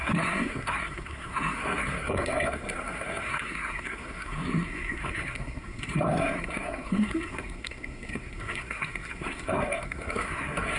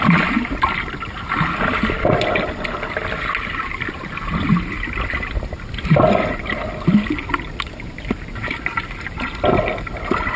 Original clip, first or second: second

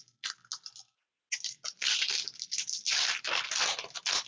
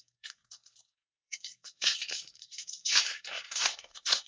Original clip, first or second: first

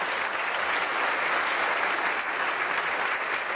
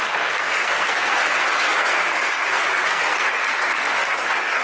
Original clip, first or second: first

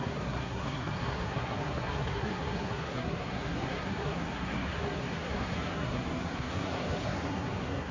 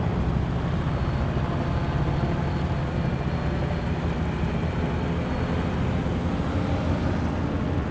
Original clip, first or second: second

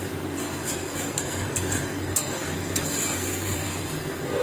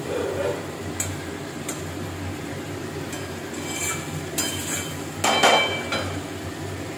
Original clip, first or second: second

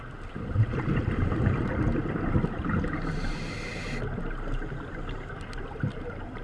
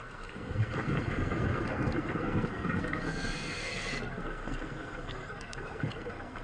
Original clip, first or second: first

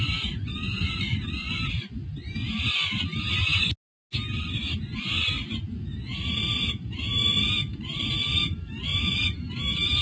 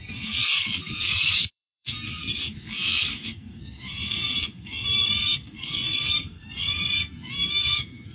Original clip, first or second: first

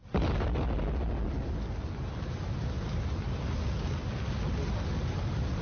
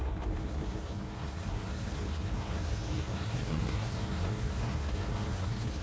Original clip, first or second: first